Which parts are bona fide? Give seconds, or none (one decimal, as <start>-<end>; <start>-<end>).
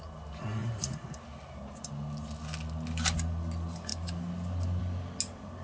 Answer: 0.0-0.6; 1.9-5.6